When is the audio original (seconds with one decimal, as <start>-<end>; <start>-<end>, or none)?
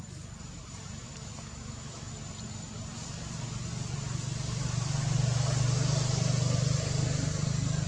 0.0-1.5; 2.1-7.9